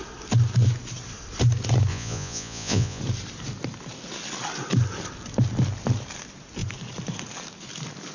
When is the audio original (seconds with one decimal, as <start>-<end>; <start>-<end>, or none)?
0.0-1.9; 3.0-8.1